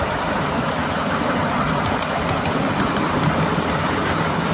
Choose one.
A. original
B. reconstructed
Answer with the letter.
A